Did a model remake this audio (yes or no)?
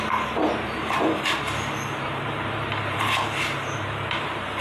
yes